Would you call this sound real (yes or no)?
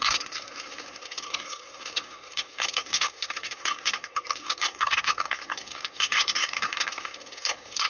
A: no